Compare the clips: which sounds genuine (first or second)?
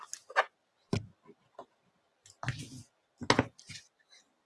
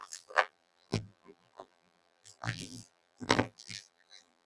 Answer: first